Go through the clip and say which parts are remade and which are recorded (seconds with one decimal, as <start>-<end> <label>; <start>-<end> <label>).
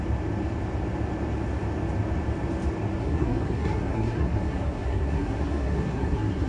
0.0-3.0 recorded; 3.0-6.5 remade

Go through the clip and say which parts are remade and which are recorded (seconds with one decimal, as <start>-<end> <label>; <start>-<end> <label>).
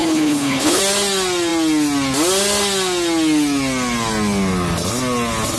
0.0-0.8 remade; 0.8-5.6 recorded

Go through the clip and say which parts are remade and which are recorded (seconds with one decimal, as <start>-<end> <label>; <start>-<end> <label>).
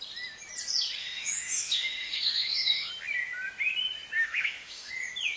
0.0-1.0 recorded; 1.0-2.9 remade; 2.9-4.2 recorded; 4.2-4.9 remade; 4.9-5.4 recorded